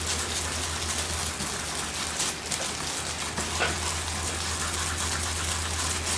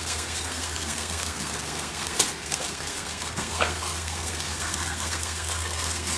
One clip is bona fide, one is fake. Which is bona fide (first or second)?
first